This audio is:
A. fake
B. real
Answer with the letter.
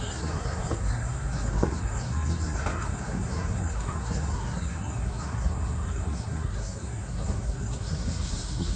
A